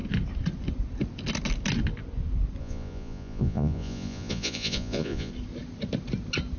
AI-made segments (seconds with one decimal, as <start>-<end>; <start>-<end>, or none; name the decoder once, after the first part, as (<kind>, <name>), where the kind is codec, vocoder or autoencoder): 2.6-5.3 (vocoder, Vocos)